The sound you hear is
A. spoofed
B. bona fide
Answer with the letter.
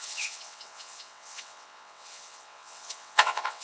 A